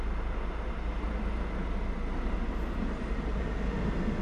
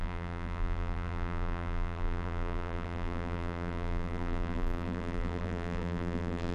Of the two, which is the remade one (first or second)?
second